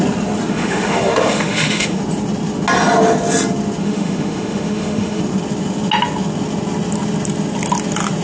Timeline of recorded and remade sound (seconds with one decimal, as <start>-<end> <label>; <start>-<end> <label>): 0.0-0.5 recorded; 0.5-2.0 remade; 2.0-3.8 recorded; 3.8-5.2 remade; 5.2-8.2 recorded